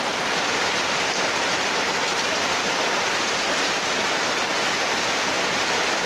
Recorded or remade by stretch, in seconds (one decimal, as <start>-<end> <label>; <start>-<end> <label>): 0.0-2.0 remade; 2.0-6.1 recorded